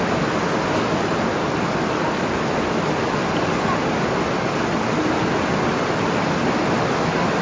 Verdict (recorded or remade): recorded